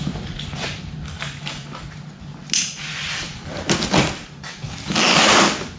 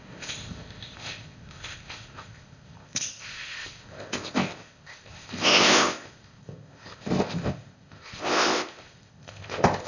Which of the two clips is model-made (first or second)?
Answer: second